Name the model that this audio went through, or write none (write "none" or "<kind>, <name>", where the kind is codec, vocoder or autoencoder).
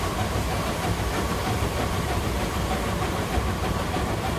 vocoder, BigVGAN v2